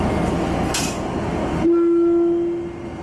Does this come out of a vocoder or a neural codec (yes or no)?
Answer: no